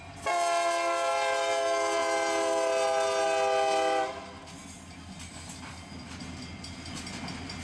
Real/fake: real